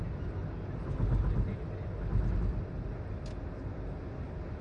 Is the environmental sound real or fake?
real